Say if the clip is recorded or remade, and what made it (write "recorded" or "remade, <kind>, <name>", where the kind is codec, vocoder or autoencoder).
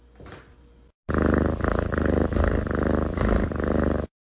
recorded